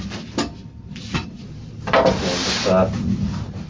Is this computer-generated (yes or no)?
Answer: no